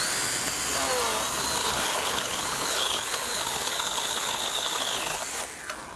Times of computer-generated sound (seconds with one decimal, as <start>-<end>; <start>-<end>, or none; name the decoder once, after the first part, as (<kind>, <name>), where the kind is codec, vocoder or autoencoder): 1.6-5.2 (codec, HILCodec)